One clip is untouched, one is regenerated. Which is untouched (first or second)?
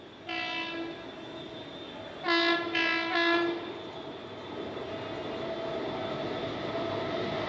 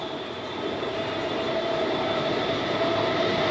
first